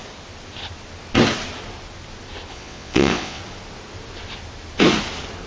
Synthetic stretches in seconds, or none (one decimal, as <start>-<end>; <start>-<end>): 2.5-3.4